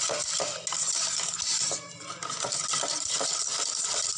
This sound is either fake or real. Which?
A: real